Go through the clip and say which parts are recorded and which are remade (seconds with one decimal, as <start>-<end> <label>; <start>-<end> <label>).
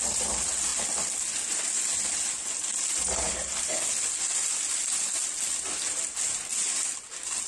0.0-7.5 recorded